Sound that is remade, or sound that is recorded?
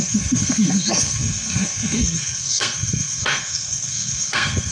remade